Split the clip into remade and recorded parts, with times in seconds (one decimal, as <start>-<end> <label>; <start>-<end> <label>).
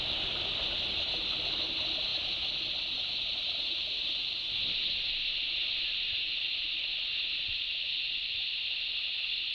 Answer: 0.0-9.5 recorded